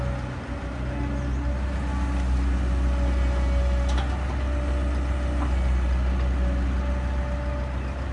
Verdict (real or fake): real